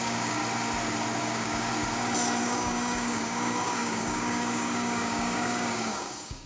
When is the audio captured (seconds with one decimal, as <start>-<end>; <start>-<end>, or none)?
0.4-1.2; 1.7-2.4